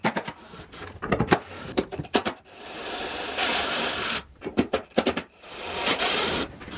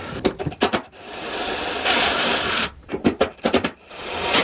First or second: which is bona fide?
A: second